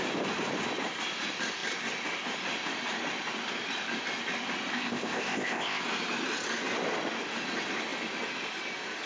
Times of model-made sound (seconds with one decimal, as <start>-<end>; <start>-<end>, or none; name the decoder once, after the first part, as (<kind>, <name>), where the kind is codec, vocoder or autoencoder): 4.7-5.8 (codec, ZipCodec)

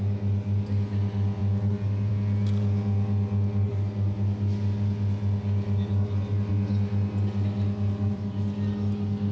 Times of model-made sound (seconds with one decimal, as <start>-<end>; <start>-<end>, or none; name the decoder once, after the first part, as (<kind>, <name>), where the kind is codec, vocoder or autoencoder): none

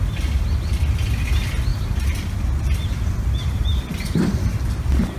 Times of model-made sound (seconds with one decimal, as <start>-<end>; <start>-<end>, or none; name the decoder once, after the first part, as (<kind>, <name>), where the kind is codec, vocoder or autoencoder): none